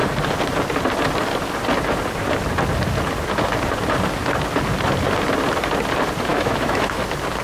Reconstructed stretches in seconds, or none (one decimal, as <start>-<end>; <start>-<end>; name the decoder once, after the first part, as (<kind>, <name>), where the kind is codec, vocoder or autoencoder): 6.3-7.0 (autoencoder, DAC-VAE)